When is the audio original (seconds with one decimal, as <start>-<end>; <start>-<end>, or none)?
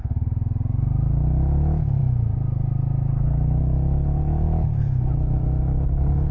0.0-6.3